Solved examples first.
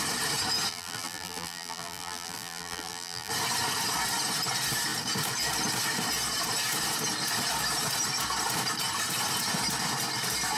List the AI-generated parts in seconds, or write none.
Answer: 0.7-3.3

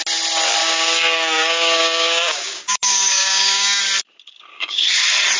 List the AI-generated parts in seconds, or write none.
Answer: 0.6-3.8; 4.5-5.0

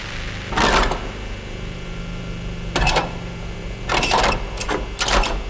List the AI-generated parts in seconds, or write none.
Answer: none

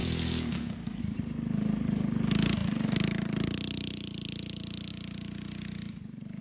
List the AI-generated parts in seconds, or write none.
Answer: 0.0-1.0